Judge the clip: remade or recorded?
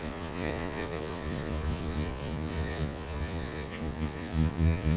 remade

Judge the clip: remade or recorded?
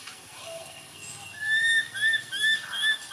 remade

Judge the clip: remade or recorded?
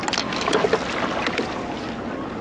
recorded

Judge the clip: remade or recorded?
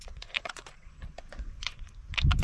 remade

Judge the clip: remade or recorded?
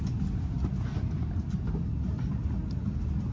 recorded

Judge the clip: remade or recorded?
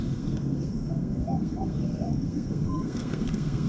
remade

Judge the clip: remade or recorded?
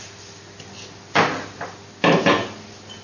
recorded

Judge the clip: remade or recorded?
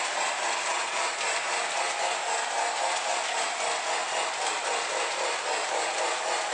recorded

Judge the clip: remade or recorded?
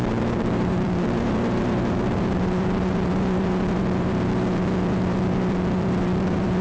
remade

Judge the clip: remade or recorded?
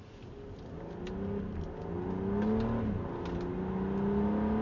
recorded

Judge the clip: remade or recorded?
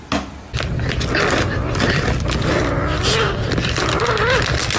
recorded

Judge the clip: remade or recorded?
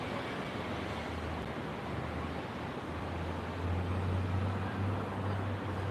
recorded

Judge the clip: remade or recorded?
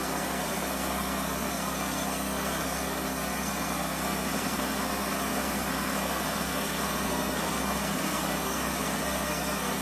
remade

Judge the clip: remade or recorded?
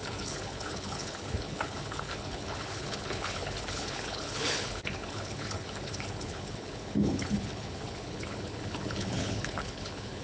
remade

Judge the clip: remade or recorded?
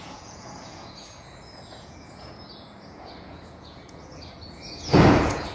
remade